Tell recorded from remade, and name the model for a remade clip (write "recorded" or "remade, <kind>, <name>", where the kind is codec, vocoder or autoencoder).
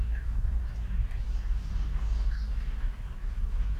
remade, codec, DAC